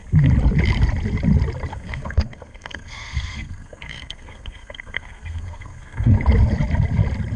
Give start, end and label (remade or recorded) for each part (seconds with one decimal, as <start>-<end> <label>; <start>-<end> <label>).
0.0-1.7 recorded; 1.7-6.1 remade; 6.1-7.4 recorded